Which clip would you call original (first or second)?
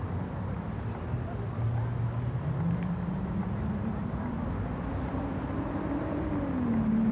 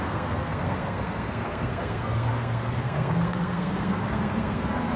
first